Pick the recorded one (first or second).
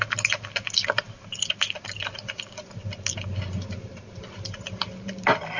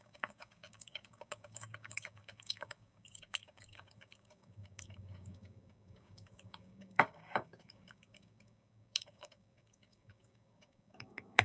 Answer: first